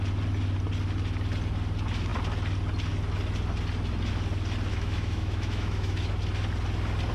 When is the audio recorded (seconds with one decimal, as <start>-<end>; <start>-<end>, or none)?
0.0-4.7; 6.1-7.1